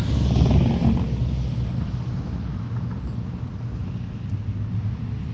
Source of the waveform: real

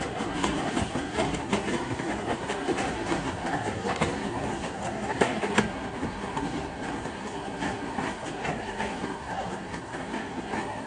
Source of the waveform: fake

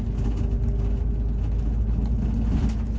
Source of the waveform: real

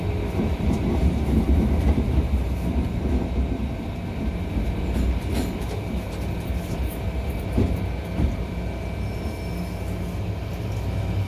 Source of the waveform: real